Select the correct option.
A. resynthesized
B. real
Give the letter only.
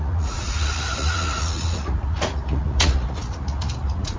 A